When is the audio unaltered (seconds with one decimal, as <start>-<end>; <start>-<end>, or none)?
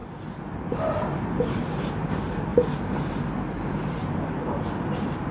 2.5-3.8